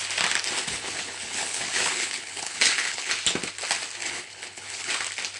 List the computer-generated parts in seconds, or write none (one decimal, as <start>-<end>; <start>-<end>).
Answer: 0.6-3.1; 4.0-4.9